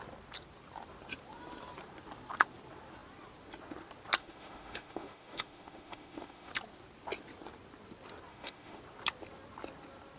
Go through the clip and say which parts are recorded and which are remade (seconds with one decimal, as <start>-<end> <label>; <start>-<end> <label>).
0.0-4.2 recorded; 4.2-6.5 remade; 6.5-8.3 recorded; 8.3-8.8 remade; 8.8-10.2 recorded